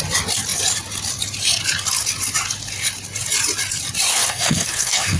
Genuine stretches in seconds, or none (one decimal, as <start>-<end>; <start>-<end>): 0.0-4.1